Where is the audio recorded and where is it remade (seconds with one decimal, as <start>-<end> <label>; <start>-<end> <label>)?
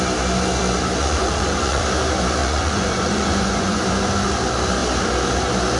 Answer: 0.0-1.0 recorded; 1.0-1.8 remade; 1.8-2.4 recorded; 2.4-3.8 remade; 3.8-5.8 recorded